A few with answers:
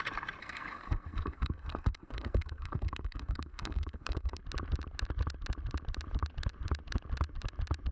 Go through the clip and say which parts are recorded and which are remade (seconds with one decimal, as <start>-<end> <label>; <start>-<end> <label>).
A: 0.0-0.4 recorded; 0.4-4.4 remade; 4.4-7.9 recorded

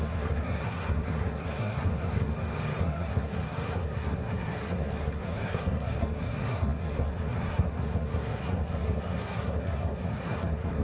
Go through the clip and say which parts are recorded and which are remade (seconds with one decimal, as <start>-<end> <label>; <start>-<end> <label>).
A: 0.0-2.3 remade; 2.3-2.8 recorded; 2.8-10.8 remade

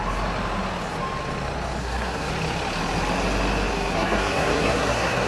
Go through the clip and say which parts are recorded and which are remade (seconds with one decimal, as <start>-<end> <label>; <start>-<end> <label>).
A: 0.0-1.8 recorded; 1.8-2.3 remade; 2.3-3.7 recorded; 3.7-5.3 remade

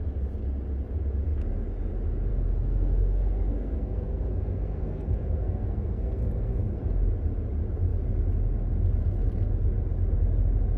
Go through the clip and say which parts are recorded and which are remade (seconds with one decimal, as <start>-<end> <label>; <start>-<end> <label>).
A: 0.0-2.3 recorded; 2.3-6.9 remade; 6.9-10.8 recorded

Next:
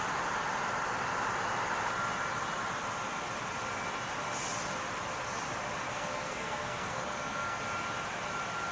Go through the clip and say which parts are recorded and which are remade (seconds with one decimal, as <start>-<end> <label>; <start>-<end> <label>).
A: 0.0-5.9 recorded; 5.9-7.6 remade; 7.6-8.7 recorded